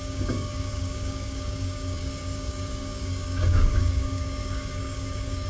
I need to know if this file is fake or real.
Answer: fake